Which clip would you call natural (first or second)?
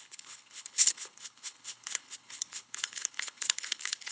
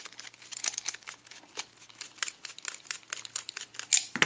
second